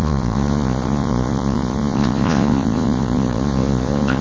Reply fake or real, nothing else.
fake